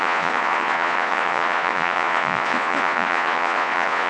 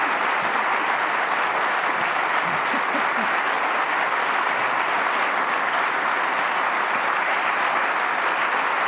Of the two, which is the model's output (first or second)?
first